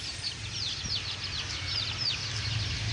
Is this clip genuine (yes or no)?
yes